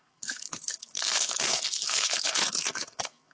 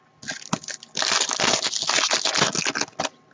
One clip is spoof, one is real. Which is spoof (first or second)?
first